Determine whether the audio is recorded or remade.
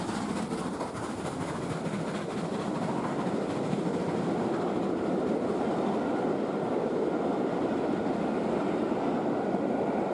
recorded